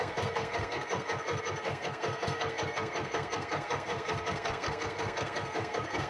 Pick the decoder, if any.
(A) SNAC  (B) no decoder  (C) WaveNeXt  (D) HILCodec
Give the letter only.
A